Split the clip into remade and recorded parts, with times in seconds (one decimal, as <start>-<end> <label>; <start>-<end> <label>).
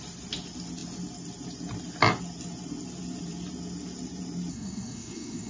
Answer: 0.0-4.5 recorded; 4.5-5.5 remade